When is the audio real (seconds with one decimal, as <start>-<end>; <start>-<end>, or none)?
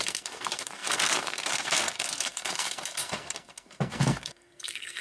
none